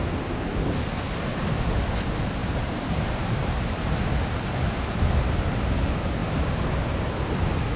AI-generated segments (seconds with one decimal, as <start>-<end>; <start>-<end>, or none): 2.4-4.4